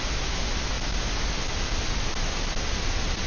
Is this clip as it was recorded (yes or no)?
yes